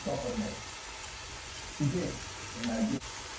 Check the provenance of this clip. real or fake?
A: fake